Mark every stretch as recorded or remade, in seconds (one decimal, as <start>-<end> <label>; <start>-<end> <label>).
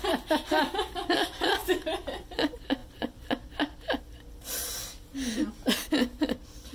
0.0-6.7 recorded